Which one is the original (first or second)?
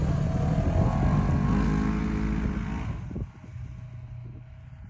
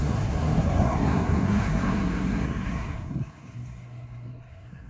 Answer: first